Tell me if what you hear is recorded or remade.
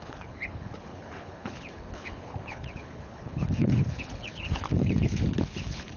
remade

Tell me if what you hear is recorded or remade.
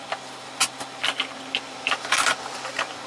recorded